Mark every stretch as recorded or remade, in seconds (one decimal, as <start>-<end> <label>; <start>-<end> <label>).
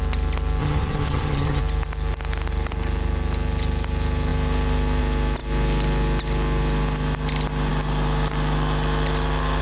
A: 0.0-0.6 recorded; 0.6-1.6 remade; 1.6-9.6 recorded